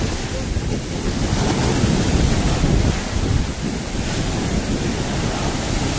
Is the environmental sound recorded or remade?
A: recorded